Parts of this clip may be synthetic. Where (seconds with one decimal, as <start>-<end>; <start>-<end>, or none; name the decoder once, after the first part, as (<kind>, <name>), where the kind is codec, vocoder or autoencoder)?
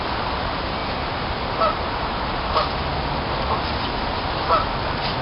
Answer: none